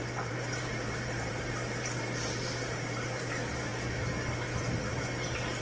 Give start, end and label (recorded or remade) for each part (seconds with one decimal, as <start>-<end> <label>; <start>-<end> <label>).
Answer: 0.0-3.7 remade; 3.7-4.8 recorded; 4.8-5.6 remade